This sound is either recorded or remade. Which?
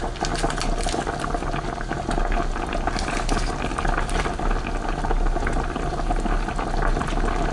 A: recorded